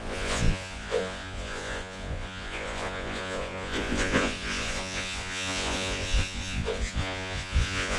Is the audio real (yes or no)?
no